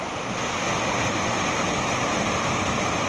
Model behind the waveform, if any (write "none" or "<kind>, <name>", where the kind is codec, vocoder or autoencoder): none